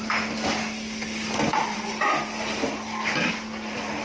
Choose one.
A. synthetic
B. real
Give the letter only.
B